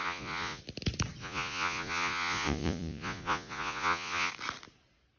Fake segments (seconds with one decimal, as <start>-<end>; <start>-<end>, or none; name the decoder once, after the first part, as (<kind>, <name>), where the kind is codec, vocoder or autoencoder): 0.0-0.6 (vocoder, Vocos); 1.2-4.3